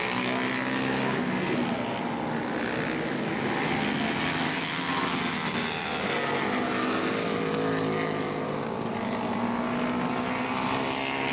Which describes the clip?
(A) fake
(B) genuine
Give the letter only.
B